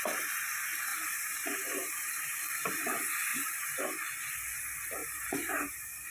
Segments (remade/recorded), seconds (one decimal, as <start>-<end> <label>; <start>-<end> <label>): 0.0-0.9 recorded; 0.9-1.9 remade; 1.9-3.3 recorded; 3.3-3.8 remade; 3.8-5.0 recorded; 5.0-6.1 remade